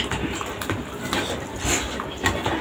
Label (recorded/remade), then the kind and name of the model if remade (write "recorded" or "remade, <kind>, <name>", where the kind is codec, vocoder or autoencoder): recorded